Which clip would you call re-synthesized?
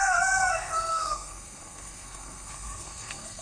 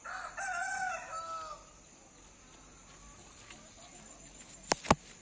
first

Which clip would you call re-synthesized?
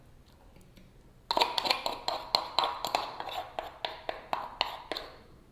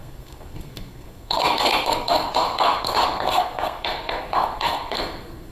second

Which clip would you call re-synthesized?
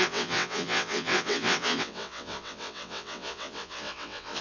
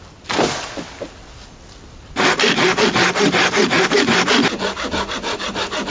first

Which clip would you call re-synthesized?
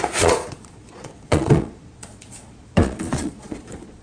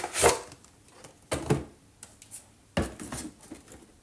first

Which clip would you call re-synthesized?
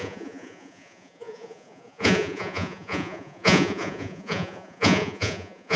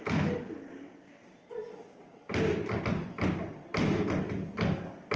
first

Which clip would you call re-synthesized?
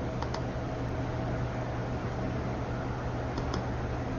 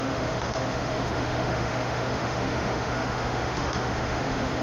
second